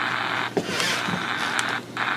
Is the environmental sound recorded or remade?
recorded